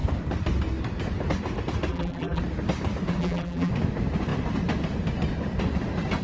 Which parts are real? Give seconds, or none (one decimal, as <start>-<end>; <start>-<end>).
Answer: 0.0-1.9; 2.4-3.2; 3.7-6.2